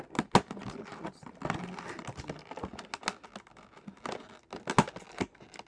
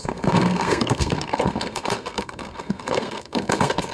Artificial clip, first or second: second